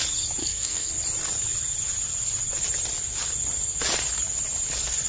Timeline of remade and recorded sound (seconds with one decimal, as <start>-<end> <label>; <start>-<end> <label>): 0.0-0.4 recorded; 0.4-0.9 remade; 0.9-5.1 recorded